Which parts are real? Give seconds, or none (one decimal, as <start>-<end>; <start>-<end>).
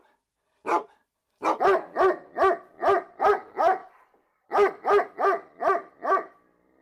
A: 0.0-0.7; 1.4-2.7; 3.3-6.8